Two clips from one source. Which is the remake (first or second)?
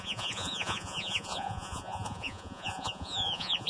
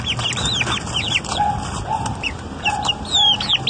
first